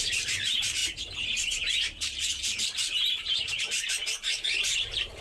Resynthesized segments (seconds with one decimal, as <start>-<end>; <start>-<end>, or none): 0.0-5.2